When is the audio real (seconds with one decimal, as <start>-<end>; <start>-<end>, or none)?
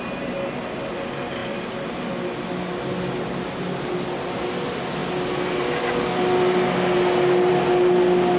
0.0-8.4